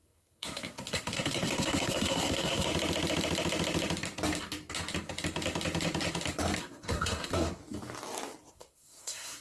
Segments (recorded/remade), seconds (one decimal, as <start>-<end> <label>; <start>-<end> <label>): 0.0-2.7 remade; 2.7-6.6 recorded; 6.6-7.6 remade; 7.6-8.5 recorded; 8.5-9.4 remade